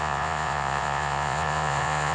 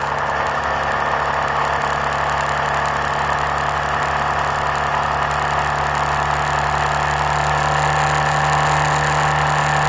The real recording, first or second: second